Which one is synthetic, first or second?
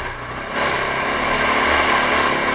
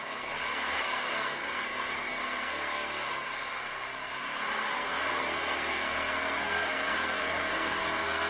second